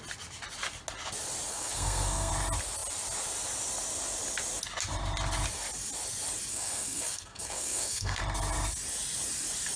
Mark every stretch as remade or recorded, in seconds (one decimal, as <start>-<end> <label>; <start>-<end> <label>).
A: 0.0-1.5 recorded; 1.5-2.3 remade; 2.3-6.5 recorded; 6.5-8.2 remade; 8.2-9.8 recorded